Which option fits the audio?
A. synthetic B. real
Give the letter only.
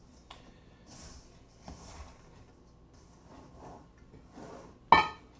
B